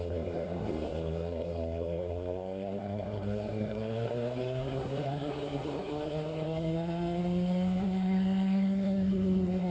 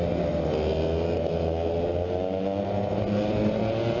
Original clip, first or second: second